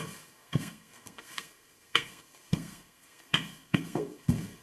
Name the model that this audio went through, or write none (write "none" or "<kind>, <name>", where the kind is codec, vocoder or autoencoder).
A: codec, SNAC